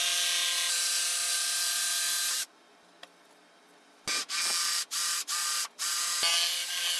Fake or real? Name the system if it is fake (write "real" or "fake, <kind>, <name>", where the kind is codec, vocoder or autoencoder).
real